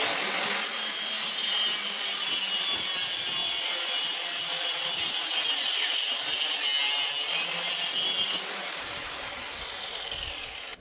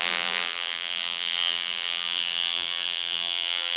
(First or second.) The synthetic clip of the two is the second